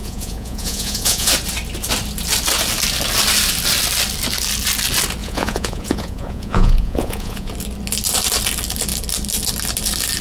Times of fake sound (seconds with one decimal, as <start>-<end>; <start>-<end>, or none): 0.0-1.3; 5.2-7.5